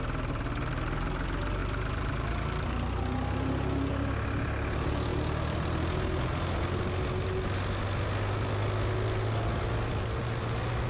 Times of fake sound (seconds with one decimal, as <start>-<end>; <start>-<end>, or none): none